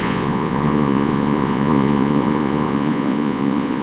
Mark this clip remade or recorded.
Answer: remade